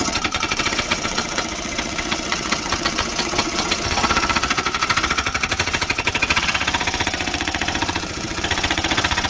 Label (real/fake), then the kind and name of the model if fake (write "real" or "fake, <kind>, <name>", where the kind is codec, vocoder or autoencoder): fake, vocoder, WaveNeXt